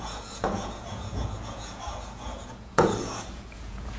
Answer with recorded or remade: remade